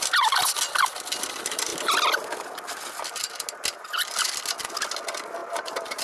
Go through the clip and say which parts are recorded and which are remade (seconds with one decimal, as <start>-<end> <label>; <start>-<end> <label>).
0.0-5.4 recorded; 5.4-6.0 remade